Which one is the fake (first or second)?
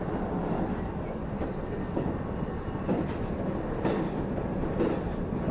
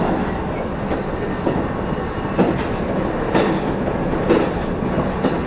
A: first